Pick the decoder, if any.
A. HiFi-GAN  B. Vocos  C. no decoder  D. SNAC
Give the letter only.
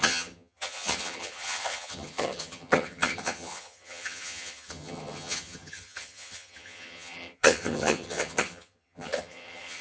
A